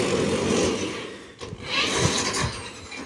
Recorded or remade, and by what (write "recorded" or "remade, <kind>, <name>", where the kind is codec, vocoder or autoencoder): recorded